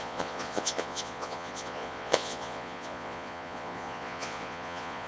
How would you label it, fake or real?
fake